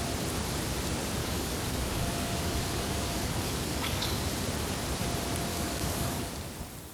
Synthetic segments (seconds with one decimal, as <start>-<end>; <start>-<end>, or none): 1.2-4.3; 5.5-6.3